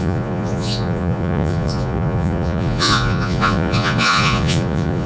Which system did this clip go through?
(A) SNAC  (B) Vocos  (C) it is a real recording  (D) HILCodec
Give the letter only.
B